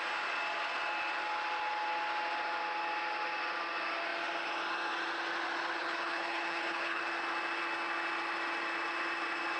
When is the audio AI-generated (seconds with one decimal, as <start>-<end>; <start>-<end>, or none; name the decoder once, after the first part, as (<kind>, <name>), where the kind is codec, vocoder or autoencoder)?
5.8-7.0 (codec, HILCodec)

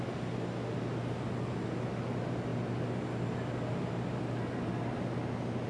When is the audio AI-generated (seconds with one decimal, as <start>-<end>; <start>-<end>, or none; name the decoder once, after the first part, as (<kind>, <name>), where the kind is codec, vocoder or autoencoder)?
none

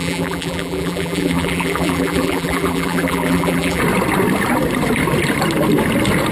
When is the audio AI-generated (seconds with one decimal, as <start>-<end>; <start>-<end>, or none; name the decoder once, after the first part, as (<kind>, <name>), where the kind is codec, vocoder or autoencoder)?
0.0-3.8 (vocoder, BigVGAN v2)

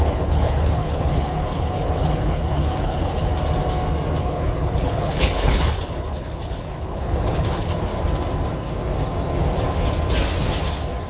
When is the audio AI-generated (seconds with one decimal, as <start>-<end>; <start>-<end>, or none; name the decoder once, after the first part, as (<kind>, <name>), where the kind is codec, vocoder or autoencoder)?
0.0-3.3 (codec, HILCodec); 4.2-7.9

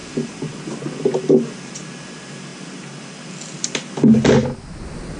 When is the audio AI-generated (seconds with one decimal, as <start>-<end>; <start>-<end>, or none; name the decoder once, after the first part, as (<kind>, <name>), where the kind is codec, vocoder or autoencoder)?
none